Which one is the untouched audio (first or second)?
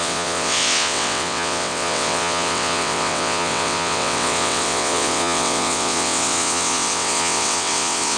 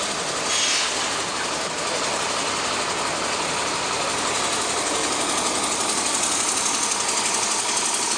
second